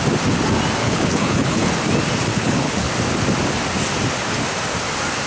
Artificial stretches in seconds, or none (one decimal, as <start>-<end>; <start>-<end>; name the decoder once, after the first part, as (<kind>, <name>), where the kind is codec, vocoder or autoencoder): 0.8-1.7 (codec, HILCodec); 2.3-2.9